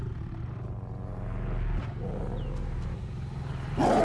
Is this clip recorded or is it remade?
recorded